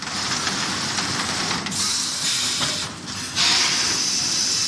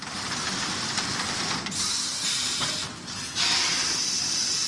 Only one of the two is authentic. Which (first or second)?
first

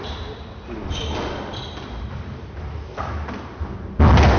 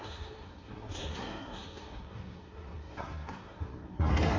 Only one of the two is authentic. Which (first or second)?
first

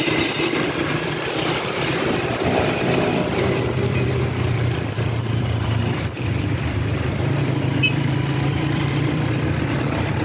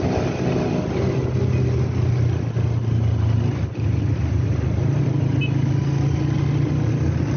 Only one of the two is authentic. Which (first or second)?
second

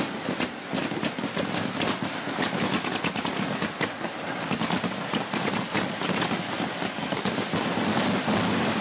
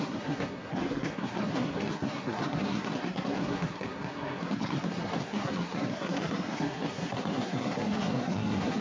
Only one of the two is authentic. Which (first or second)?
first